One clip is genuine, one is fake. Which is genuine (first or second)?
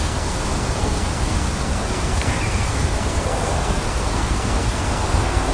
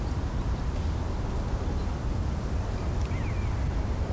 second